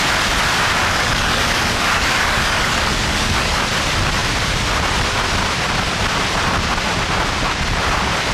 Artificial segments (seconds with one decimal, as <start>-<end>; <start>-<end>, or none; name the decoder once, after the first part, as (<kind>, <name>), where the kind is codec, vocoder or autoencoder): 0.8-3.6 (codec, DAC)